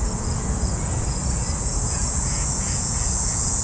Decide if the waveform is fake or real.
fake